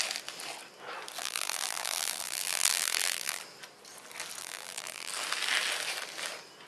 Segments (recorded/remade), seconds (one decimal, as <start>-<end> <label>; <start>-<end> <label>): 0.0-1.2 recorded; 1.2-3.4 remade; 3.4-4.4 recorded; 4.4-5.1 remade; 5.1-6.7 recorded